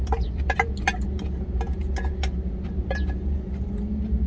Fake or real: real